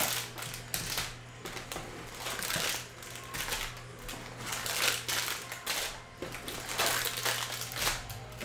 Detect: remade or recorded recorded